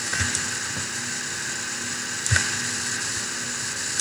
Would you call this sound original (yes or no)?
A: yes